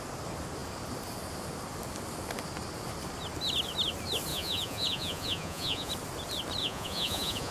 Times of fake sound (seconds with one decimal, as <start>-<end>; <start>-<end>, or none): 4.3-5.9; 6.6-7.5